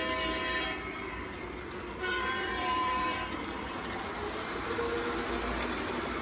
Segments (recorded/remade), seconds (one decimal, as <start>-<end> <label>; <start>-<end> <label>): 0.0-2.1 recorded; 2.1-4.0 remade; 4.0-6.2 recorded